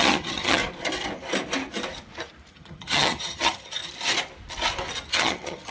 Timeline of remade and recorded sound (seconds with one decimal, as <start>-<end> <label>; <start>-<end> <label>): 0.0-0.6 remade; 0.6-2.5 recorded; 2.5-3.8 remade; 3.8-5.1 recorded; 5.1-5.7 remade